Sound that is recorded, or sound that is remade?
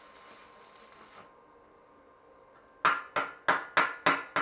recorded